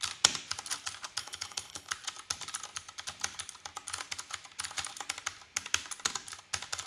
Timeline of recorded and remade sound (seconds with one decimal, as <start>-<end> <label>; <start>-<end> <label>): 0.0-1.2 recorded; 1.2-1.9 remade; 1.9-6.9 recorded